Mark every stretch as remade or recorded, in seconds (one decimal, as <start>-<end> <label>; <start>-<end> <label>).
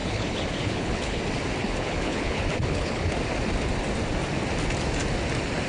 0.0-1.2 remade; 1.2-1.6 recorded; 1.6-3.1 remade; 3.1-5.7 recorded